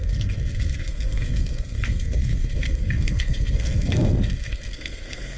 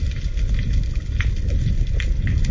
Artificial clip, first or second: first